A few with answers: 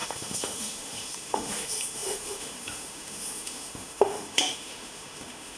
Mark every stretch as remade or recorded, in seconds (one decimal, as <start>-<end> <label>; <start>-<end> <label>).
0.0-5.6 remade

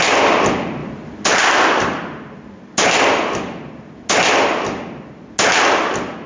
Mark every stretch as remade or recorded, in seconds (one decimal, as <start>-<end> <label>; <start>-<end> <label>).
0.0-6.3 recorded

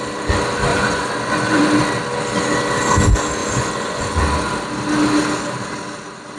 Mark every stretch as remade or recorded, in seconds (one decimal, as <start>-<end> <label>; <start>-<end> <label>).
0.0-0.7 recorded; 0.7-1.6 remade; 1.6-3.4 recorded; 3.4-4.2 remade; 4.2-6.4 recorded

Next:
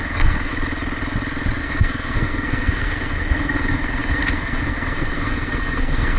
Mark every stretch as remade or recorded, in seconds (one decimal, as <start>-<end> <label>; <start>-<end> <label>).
0.0-0.5 remade; 0.5-1.6 recorded; 1.6-6.2 remade

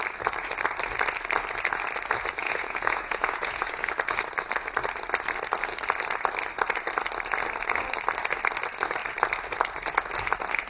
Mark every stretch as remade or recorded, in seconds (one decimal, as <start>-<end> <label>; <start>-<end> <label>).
0.0-2.4 recorded; 2.4-3.9 remade; 3.9-10.7 recorded

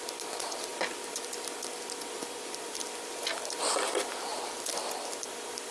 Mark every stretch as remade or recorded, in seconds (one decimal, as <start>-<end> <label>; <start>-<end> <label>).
0.0-5.7 recorded

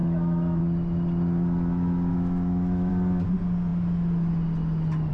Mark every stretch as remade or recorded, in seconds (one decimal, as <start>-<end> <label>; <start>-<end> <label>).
0.0-0.6 remade; 0.6-2.1 recorded; 2.1-2.9 remade; 2.9-5.1 recorded

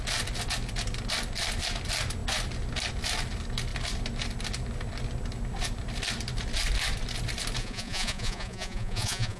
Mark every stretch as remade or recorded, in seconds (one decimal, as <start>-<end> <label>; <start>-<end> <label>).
0.0-7.6 recorded; 7.6-9.4 remade